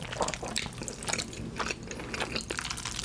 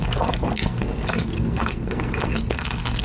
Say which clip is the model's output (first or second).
second